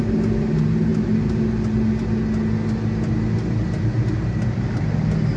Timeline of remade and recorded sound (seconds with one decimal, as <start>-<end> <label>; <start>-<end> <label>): 0.0-5.4 recorded